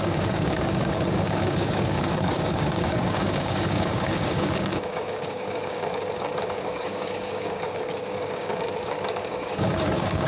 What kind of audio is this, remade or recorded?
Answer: remade